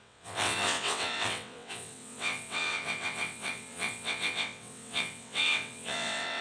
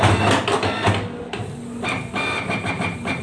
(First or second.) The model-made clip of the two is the first